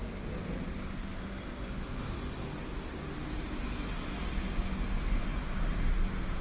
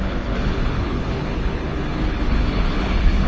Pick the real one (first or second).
first